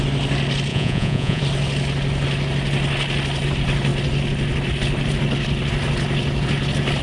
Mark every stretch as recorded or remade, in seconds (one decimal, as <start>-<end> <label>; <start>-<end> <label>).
0.0-0.7 recorded; 0.7-1.4 remade; 1.4-7.0 recorded